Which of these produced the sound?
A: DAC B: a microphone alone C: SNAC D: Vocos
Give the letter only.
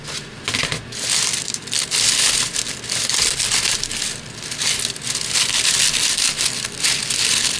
B